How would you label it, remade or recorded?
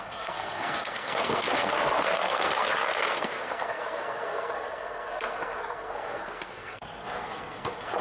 remade